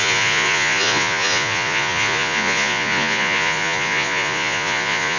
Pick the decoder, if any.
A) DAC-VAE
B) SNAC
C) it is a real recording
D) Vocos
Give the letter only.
D